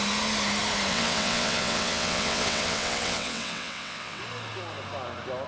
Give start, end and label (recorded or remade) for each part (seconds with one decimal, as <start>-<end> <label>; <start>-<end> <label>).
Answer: 0.0-0.9 recorded; 0.9-4.2 remade; 4.2-5.5 recorded